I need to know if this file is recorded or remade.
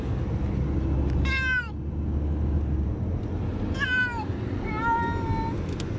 recorded